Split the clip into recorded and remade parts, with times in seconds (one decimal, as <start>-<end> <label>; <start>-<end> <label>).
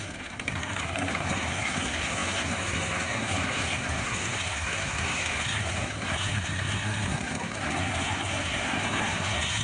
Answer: 0.0-9.6 remade